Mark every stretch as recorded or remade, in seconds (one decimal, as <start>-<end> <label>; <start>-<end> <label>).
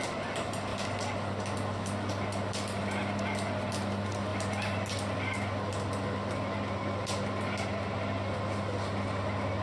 0.0-0.7 remade; 0.7-2.1 recorded; 2.1-9.6 remade